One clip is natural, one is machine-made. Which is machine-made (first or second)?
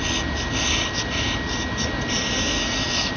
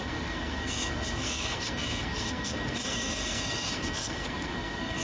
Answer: second